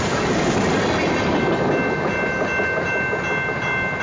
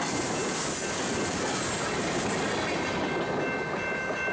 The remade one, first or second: second